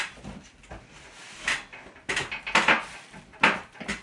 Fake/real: real